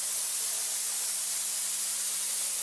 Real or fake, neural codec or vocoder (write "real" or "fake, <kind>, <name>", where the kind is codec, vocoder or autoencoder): real